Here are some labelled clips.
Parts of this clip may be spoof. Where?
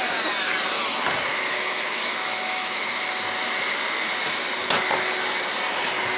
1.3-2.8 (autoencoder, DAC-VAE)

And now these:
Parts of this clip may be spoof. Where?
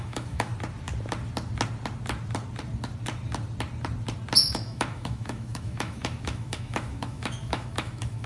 0.0-0.5 (autoencoder, DAC-VAE); 4.4-8.3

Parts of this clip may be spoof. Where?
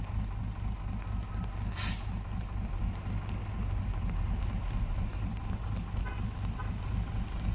none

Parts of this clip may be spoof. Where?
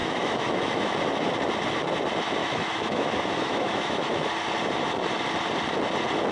0.0-1.0 (autoencoder, DAC-VAE); 2.4-4.3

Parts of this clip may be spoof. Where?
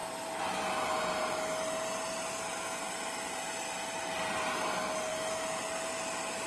5.1-5.6 (autoencoder, DAC-VAE)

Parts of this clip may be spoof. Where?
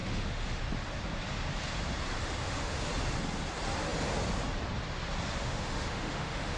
0.0-0.6 (autoencoder, DAC-VAE); 2.2-2.9; 5.4-6.6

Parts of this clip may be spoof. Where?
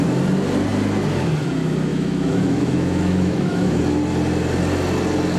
1.9-3.8 (autoencoder, DAC-VAE)